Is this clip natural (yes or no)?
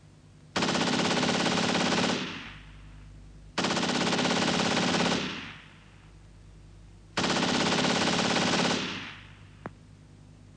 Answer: yes